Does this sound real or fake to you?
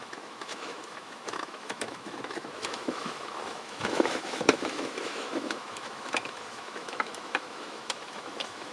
fake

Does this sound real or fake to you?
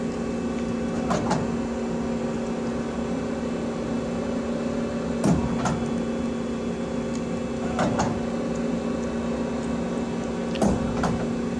real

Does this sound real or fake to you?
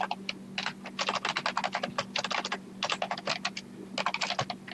real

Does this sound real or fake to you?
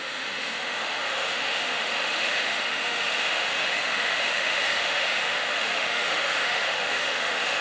fake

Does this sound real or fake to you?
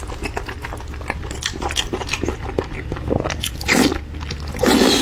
real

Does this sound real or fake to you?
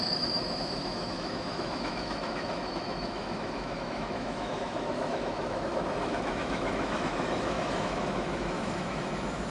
fake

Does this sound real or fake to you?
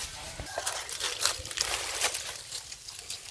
real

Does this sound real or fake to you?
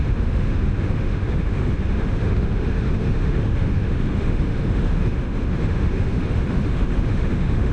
fake